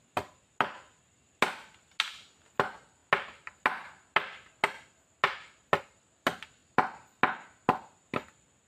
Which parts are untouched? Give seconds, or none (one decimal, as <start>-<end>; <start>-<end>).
0.0-8.7